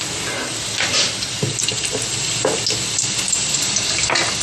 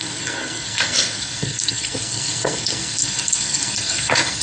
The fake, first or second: second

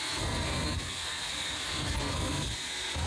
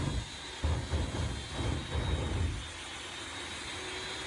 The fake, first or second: first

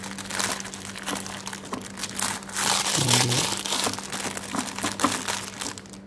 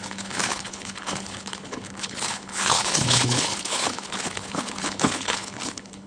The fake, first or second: second